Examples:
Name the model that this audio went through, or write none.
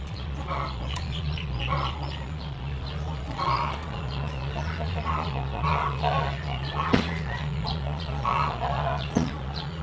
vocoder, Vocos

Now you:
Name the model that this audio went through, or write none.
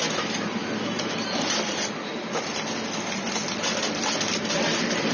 none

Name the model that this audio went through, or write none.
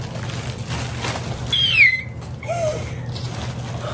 none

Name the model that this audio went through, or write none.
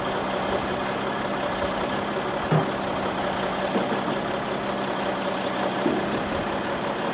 none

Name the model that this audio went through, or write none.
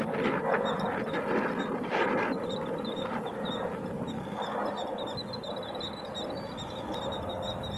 none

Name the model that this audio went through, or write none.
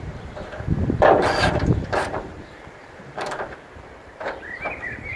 vocoder, BigVGAN v2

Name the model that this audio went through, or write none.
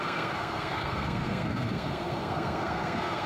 codec, SNAC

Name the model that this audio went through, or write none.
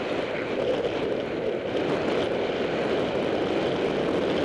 none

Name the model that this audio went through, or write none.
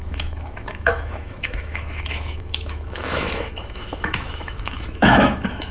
autoencoder, DAC-VAE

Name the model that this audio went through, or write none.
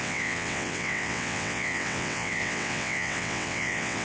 vocoder, WaveNeXt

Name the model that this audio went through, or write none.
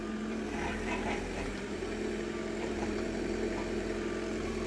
vocoder, BigVGAN v2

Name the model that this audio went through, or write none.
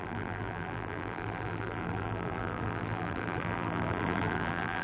vocoder, BigVGAN v2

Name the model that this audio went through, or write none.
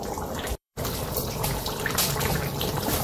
vocoder, BigVGAN v2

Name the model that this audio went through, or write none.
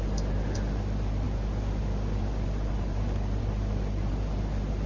none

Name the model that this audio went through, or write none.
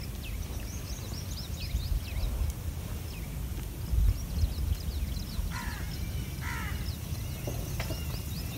none